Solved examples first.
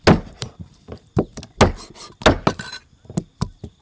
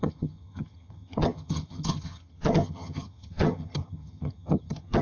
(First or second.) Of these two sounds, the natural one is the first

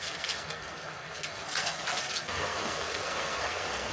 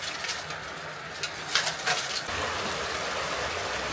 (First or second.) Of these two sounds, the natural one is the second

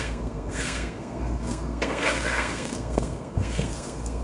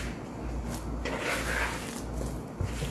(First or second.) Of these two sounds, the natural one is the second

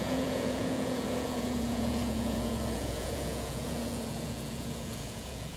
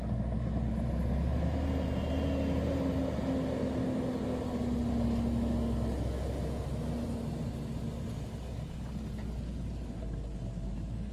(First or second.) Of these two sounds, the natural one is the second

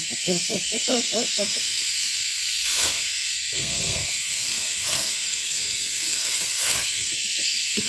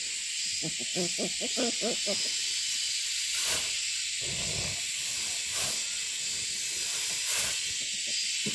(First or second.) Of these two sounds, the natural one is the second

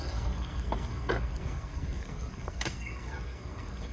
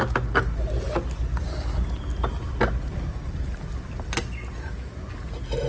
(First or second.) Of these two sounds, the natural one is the second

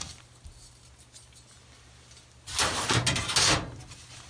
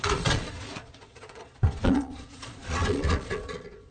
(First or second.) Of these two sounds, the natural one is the first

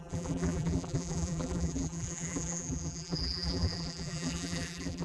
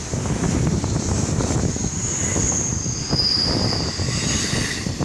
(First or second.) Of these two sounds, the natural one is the second